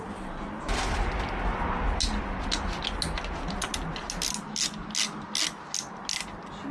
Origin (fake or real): real